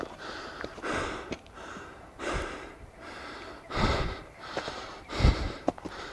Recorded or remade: remade